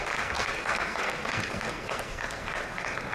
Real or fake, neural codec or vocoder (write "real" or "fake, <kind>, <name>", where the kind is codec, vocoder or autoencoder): fake, codec, SNAC